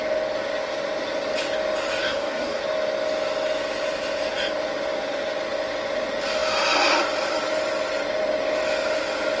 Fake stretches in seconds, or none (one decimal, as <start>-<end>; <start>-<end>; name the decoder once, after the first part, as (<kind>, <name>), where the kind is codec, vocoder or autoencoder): 2.0-2.6 (codec, DAC)

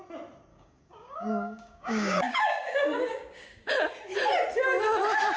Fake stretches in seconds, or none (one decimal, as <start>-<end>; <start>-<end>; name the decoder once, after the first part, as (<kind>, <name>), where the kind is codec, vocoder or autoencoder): 0.5-3.7 (codec, DAC)

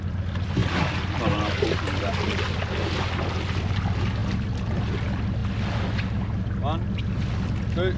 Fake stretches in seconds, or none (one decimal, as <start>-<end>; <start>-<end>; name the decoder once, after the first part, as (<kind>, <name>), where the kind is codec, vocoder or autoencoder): none

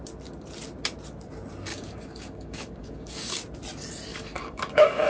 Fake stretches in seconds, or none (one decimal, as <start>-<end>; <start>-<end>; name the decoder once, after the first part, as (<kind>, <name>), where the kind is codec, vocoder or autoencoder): 1.7-3.3 (codec, DAC); 4.1-5.1

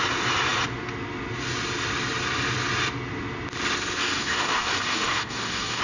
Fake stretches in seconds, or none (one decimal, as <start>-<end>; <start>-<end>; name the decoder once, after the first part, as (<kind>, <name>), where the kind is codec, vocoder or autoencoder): 4.0-5.8 (codec, DAC)

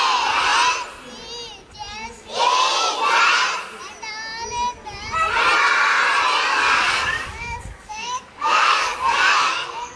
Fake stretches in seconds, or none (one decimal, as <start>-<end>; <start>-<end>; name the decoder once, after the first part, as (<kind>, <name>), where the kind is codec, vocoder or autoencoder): 6.5-10.0 (codec, DAC)

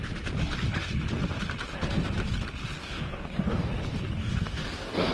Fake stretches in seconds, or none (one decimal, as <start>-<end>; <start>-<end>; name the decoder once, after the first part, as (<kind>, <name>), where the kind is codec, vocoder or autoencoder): 2.8-3.7 (codec, DAC); 4.2-5.1

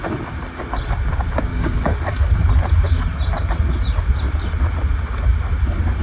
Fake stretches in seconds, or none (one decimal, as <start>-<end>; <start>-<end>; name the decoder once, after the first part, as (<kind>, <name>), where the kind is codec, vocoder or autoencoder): 1.5-2.2 (codec, DAC)